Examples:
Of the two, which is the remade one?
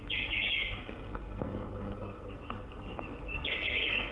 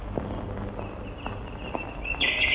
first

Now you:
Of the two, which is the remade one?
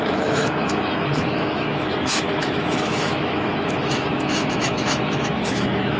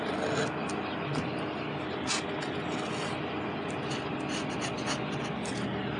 first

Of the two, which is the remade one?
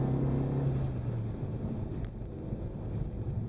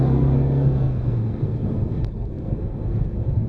second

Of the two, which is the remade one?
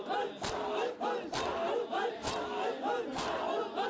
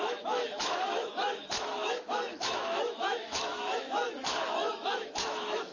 second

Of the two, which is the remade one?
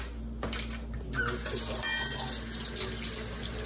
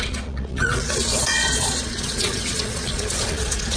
second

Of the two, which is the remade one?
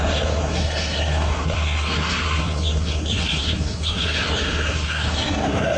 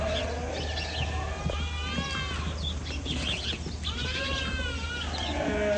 first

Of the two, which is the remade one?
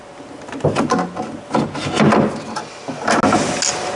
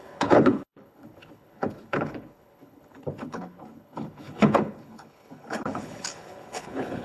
second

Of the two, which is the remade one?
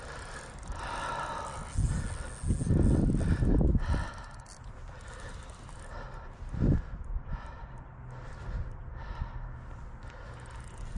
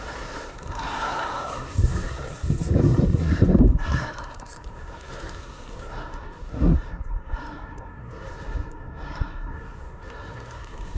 second